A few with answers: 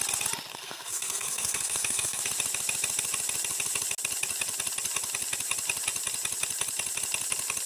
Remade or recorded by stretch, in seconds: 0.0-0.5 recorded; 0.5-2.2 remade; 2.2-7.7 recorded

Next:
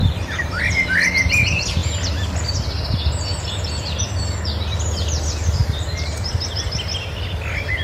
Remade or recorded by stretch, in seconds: 0.0-0.6 remade; 0.6-5.6 recorded; 5.6-6.5 remade; 6.5-7.8 recorded

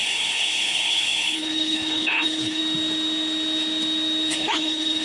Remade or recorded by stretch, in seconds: 0.0-2.6 remade; 2.6-4.3 recorded; 4.3-5.0 remade

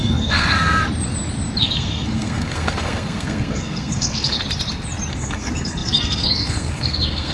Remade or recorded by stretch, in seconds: 0.0-0.8 remade; 0.8-1.6 recorded; 1.6-4.4 remade; 4.4-5.1 recorded; 5.1-7.3 remade